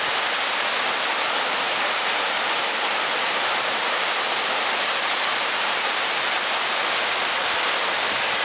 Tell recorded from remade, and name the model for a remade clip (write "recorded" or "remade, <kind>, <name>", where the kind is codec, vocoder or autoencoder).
recorded